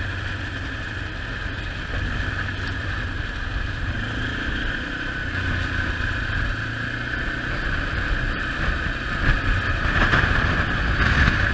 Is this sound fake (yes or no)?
no